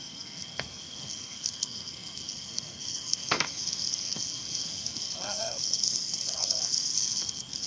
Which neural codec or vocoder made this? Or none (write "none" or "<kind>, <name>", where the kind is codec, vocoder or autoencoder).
codec, SNAC